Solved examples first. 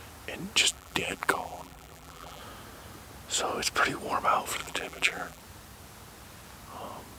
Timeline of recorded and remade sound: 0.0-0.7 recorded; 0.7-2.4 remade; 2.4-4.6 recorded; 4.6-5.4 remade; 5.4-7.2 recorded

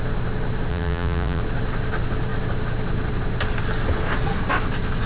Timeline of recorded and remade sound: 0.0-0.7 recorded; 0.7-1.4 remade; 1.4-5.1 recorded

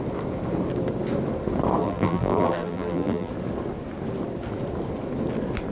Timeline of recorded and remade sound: 0.0-1.8 recorded; 1.8-3.3 remade; 3.3-5.7 recorded